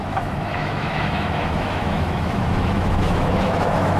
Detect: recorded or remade remade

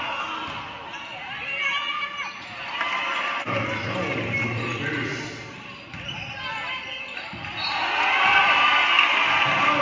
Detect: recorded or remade recorded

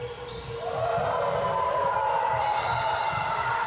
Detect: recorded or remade recorded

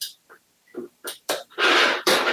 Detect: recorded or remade remade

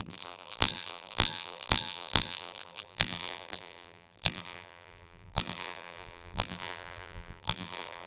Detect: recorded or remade remade